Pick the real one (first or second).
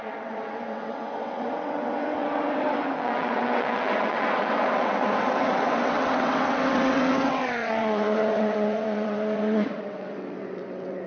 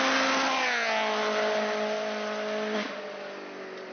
second